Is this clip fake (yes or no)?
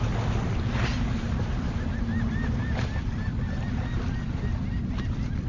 no